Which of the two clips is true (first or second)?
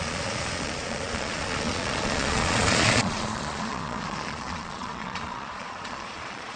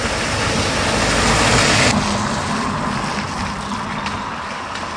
second